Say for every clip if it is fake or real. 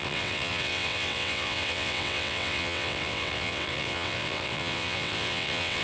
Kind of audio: fake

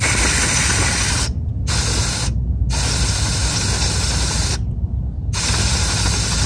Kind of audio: real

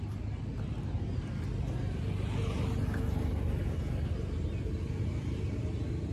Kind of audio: real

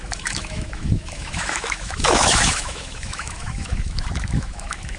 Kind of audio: fake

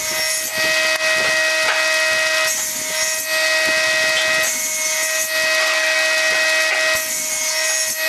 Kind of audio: real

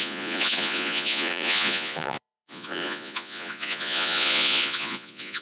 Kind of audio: fake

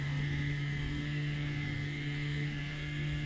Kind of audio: fake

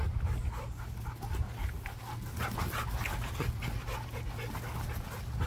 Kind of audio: real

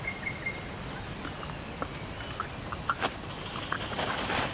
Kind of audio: real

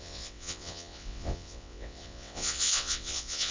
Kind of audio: fake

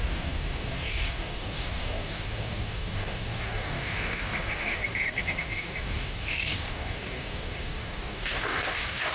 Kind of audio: fake